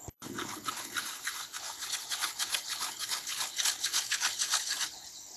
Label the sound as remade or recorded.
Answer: remade